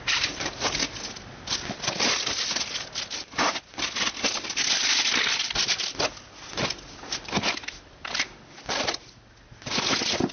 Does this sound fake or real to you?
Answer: real